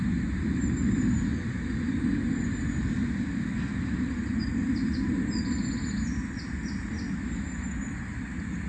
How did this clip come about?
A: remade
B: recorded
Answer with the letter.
B